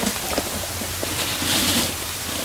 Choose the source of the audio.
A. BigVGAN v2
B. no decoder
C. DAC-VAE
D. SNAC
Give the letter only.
B